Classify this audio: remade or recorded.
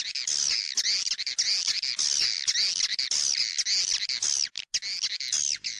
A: recorded